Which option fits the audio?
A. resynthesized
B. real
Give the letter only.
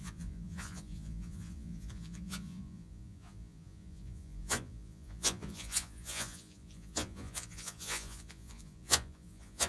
A